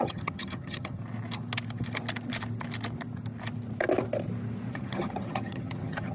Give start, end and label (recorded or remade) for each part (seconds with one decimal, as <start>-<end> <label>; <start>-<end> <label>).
0.0-1.0 remade; 1.0-4.7 recorded; 4.7-6.1 remade